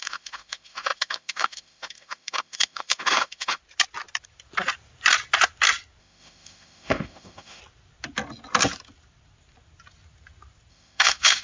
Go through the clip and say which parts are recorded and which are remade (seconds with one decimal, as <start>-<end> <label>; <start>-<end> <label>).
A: 0.0-3.6 remade; 3.6-6.0 recorded; 6.0-7.6 remade; 7.6-10.7 recorded; 10.7-11.4 remade